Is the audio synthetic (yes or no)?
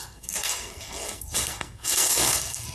yes